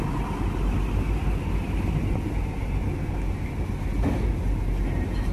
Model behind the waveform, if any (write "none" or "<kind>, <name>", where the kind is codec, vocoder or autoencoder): none